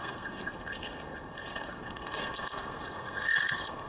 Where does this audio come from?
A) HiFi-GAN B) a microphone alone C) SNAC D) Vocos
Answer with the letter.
C